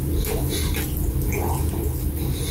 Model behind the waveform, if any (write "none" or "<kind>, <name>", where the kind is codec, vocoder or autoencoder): none